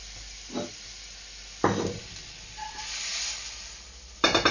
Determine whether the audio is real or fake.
fake